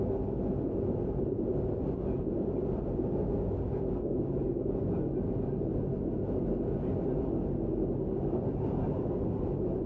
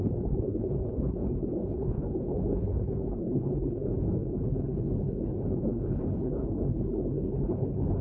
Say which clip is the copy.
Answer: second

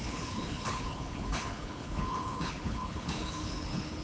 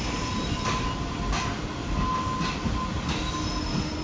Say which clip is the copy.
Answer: first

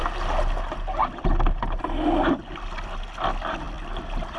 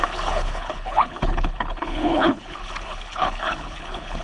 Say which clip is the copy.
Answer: second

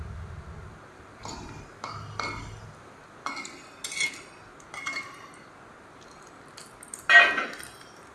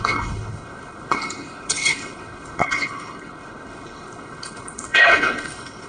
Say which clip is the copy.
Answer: second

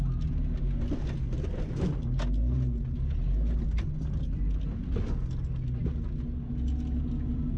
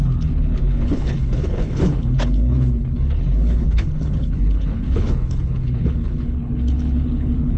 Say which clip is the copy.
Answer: second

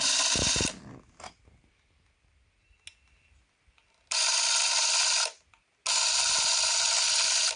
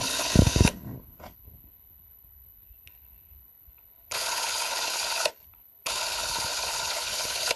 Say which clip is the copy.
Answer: second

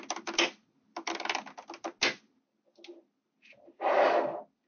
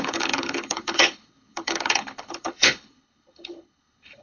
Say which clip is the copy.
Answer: second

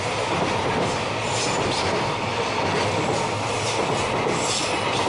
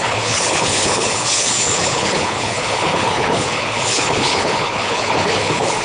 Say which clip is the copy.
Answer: second